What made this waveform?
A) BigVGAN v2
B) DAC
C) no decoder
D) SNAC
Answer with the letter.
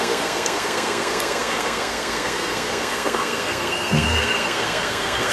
D